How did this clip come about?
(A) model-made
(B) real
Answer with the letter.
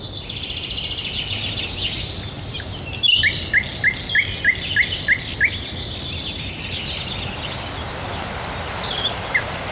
B